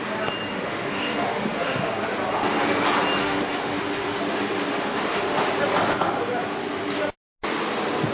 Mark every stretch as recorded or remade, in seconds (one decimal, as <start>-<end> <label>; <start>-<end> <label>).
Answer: 0.0-0.5 recorded; 0.5-1.9 remade; 1.9-3.2 recorded; 3.2-4.2 remade; 4.2-4.7 recorded; 4.7-5.4 remade; 5.4-8.1 recorded